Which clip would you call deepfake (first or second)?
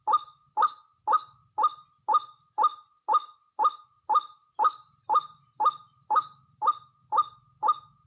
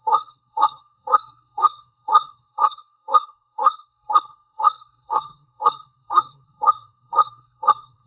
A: second